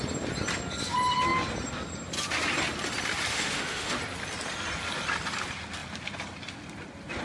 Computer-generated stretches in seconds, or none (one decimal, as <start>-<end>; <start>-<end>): 3.3-4.0